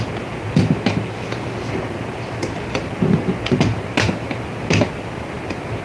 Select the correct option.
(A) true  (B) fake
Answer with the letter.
A